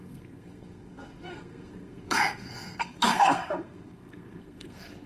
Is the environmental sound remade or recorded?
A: remade